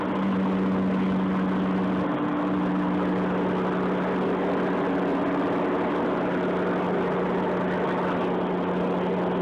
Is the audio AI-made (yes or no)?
no